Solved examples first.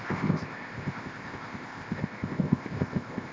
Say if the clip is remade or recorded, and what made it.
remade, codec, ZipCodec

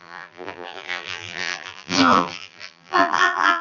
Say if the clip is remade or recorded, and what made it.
remade, vocoder, BigVGAN v2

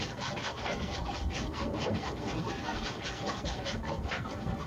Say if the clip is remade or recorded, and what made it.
remade, codec, SNAC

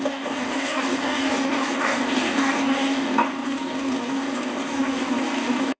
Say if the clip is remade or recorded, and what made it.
remade, codec, DAC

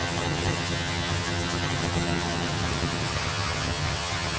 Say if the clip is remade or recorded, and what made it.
remade, vocoder, HiFi-GAN